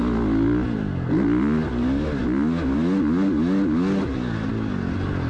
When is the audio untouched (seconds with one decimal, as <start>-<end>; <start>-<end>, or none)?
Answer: 0.0-5.3